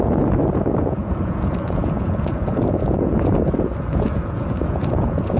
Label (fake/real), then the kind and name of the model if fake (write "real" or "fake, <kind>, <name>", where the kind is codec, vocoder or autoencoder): fake, vocoder, Vocos